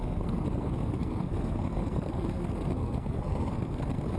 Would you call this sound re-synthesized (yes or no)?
yes